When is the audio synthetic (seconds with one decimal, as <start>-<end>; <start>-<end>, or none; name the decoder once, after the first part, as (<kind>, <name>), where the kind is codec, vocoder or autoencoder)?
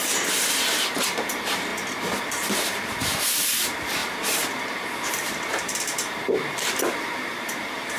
0.0-1.7 (vocoder, BigVGAN v2); 2.2-8.0